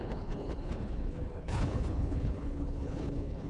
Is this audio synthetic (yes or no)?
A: yes